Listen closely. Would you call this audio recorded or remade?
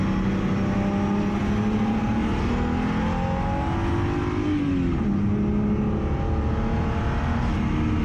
recorded